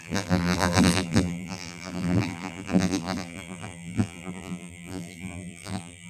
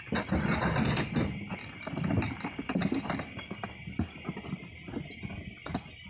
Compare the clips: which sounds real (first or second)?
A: second